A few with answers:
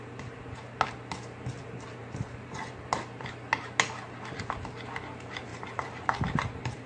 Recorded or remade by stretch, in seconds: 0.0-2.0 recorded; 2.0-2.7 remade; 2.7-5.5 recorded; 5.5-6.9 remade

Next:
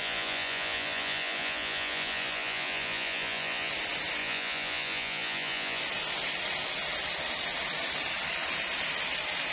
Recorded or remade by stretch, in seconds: 0.0-3.7 remade; 3.7-4.2 recorded; 4.2-5.8 remade; 5.8-9.5 recorded

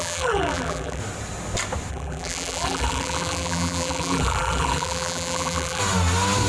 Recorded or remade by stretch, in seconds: 0.0-1.0 remade; 1.0-1.9 recorded; 1.9-5.8 remade; 5.8-6.5 recorded

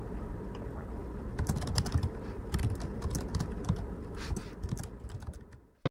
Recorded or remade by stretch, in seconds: 0.0-5.9 recorded

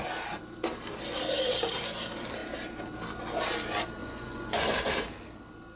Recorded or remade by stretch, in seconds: 0.0-4.0 recorded; 4.0-4.9 remade; 4.9-5.8 recorded

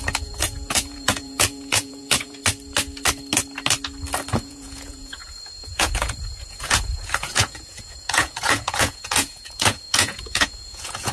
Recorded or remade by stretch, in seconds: 0.0-2.4 remade; 2.4-4.3 recorded; 4.3-11.1 remade